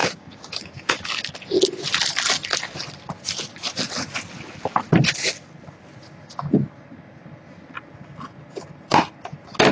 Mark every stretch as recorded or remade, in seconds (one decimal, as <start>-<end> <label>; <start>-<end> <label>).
0.0-1.1 remade; 1.1-9.7 recorded